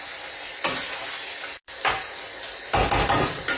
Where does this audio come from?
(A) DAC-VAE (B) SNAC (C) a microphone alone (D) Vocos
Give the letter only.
C